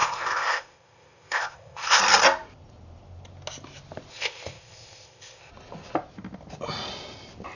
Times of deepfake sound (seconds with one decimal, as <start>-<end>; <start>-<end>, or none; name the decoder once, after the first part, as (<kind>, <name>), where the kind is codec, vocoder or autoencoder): 0.0-2.0 (codec, ZipCodec); 4.1-5.5